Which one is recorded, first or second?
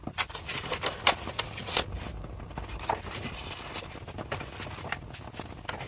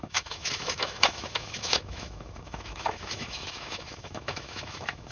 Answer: first